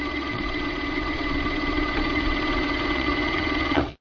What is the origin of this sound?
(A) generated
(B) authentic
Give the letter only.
A